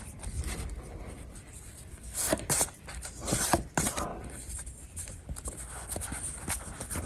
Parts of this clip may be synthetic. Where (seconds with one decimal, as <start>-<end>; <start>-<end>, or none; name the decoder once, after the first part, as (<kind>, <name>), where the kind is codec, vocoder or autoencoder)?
1.9-2.5 (codec, SNAC)